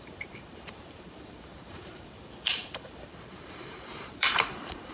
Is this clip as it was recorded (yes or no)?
no